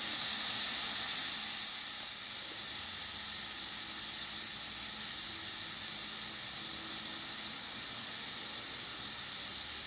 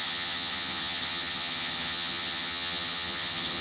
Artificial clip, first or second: second